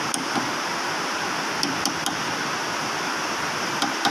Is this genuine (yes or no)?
yes